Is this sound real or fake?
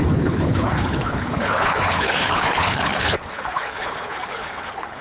fake